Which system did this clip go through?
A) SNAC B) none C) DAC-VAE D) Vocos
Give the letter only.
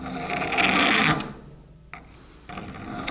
B